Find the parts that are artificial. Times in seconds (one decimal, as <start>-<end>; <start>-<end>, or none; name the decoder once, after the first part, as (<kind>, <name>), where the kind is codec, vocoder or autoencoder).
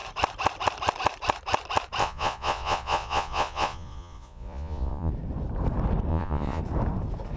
2.0-5.1 (vocoder, Vocos); 6.1-6.6